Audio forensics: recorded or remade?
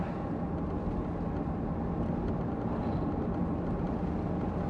recorded